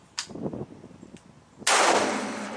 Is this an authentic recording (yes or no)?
yes